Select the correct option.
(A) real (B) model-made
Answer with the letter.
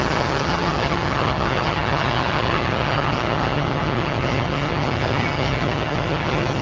B